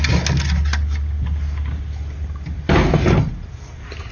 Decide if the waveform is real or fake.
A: real